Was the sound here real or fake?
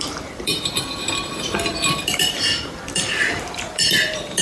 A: fake